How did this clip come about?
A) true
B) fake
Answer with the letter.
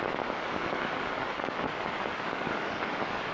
B